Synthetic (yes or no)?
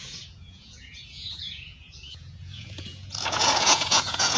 yes